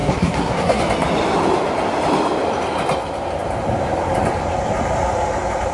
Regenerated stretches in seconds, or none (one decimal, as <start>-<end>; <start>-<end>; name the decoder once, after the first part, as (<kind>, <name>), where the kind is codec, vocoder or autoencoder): 0.0-0.8 (codec, SNAC)